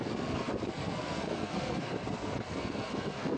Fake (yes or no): yes